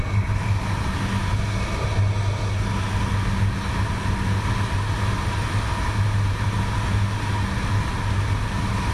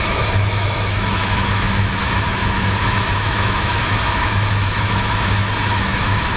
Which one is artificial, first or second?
second